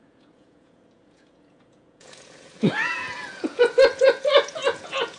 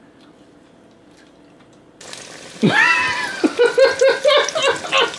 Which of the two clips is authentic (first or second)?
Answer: second